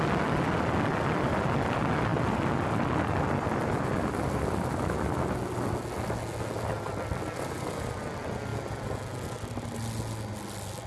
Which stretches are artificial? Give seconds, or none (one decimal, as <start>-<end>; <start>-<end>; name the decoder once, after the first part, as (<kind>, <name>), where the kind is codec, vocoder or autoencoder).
none